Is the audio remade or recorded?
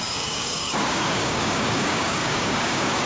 remade